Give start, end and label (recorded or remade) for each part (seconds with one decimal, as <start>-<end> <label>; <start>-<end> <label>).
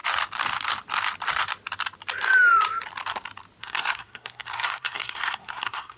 0.0-3.6 recorded; 3.6-6.0 remade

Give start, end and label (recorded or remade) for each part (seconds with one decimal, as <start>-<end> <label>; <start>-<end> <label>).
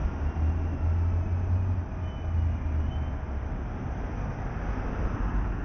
0.0-5.6 recorded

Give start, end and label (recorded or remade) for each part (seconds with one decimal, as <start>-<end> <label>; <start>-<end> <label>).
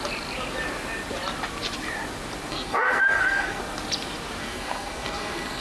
0.0-2.5 recorded; 2.5-3.6 remade; 3.6-4.4 recorded; 4.4-5.6 remade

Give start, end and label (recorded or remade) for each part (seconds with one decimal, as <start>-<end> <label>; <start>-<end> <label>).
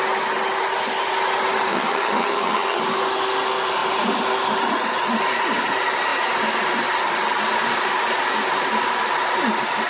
0.0-1.7 recorded; 1.7-2.8 remade; 2.8-9.9 recorded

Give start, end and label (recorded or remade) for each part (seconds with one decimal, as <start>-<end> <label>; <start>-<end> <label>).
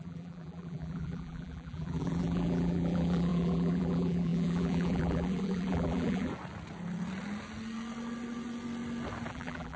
0.0-6.3 remade; 6.3-9.3 recorded; 9.3-9.8 remade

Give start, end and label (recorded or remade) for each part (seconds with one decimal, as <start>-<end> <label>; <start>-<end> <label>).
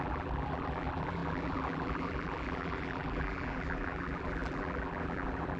0.0-5.6 remade